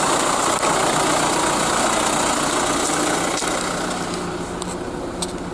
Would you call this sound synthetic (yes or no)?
no